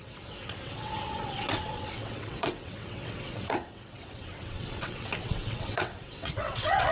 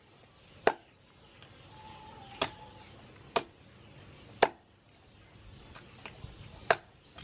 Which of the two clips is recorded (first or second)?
second